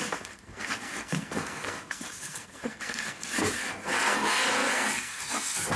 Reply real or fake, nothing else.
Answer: fake